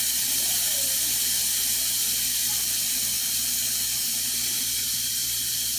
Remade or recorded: recorded